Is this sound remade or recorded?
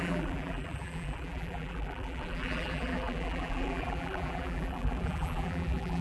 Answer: remade